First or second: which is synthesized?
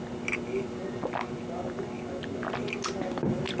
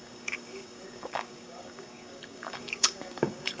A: second